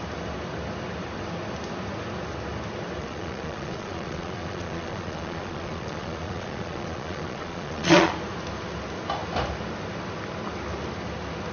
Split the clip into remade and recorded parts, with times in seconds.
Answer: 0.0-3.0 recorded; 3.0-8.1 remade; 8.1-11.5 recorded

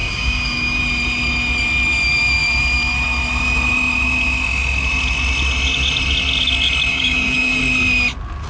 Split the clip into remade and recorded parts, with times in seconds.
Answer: 0.0-0.8 remade; 0.8-6.9 recorded; 6.9-7.6 remade; 7.6-8.5 recorded

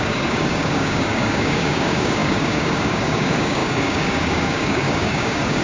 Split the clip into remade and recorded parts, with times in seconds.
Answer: 0.0-5.6 remade